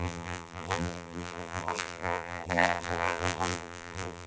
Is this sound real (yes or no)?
no